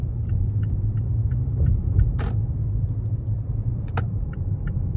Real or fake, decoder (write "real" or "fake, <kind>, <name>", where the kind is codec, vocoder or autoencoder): fake, vocoder, BigVGAN v2